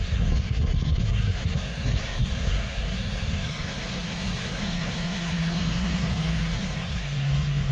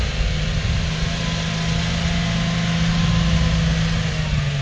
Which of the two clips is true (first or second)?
second